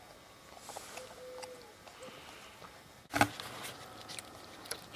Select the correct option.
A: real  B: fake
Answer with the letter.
A